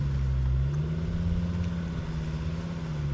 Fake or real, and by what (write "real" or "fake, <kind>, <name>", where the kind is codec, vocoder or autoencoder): real